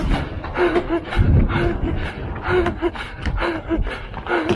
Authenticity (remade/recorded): recorded